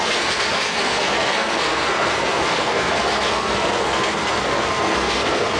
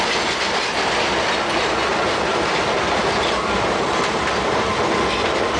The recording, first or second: second